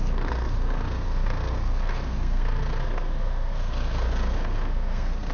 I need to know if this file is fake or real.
fake